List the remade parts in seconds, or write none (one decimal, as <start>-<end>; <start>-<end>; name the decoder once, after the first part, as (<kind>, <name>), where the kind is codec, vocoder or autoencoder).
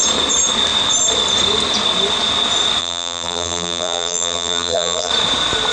2.8-5.1 (vocoder, BigVGAN v2)